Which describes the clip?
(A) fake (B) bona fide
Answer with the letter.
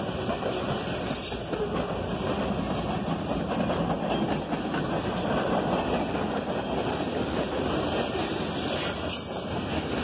B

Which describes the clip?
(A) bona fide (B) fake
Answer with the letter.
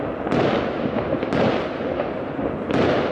A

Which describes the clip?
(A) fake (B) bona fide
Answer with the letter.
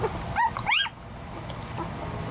B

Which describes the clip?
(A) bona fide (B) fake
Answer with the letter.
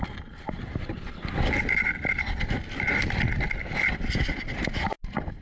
A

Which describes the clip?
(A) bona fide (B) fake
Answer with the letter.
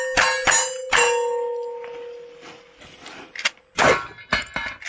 A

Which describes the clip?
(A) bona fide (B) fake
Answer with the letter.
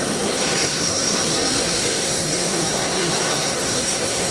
B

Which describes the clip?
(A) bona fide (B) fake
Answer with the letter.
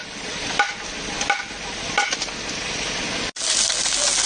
A